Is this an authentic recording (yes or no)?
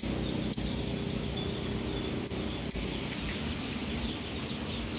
yes